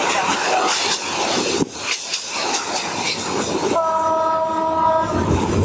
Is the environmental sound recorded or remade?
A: recorded